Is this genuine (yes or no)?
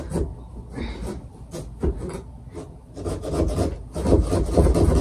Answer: yes